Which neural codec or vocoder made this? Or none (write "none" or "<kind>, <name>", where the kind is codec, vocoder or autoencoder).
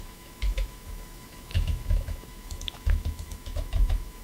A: autoencoder, DAC-VAE